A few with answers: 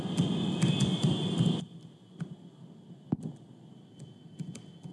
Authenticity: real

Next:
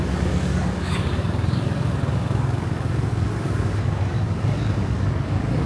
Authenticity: fake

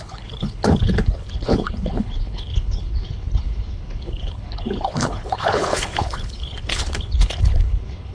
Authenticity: fake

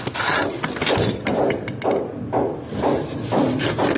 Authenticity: real